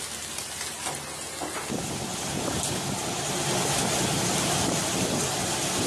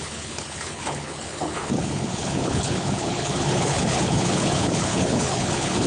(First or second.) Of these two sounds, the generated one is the second